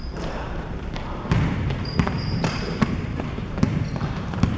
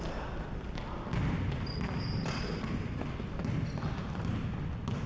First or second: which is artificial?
first